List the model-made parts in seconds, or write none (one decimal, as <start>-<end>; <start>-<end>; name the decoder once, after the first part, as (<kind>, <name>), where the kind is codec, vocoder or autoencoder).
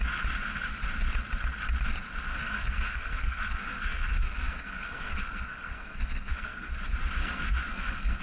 2.3-6.7 (codec, SNAC); 7.2-8.2